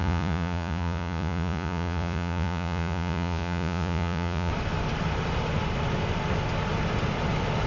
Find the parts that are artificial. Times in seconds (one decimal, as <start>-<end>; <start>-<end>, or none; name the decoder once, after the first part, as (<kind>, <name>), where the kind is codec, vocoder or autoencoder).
0.0-4.5 (vocoder, Vocos)